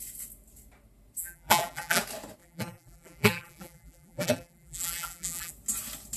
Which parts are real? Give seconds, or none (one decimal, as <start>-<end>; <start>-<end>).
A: 0.0-1.2; 2.0-2.4; 5.5-6.2